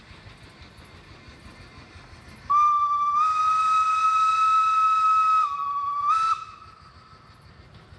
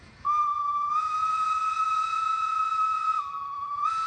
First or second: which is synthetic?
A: second